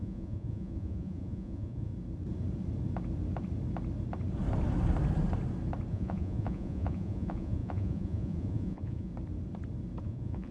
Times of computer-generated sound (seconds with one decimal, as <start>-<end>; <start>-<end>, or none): 0.0-1.9; 5.9-9.1; 10.0-10.5